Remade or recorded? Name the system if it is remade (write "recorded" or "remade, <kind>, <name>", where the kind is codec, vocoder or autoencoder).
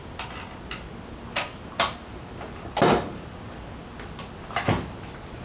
recorded